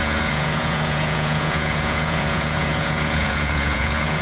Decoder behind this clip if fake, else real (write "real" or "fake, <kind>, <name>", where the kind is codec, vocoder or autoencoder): fake, vocoder, Vocos